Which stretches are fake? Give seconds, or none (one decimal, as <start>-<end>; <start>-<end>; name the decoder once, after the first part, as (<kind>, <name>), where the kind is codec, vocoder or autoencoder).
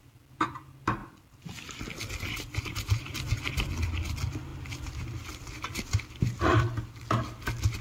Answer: 4.5-6.4 (vocoder, BigVGAN v2)